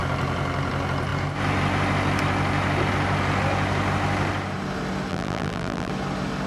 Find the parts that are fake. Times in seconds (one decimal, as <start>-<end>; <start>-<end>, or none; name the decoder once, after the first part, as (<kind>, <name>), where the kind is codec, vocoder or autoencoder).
5.1-5.9 (vocoder, BigVGAN v2)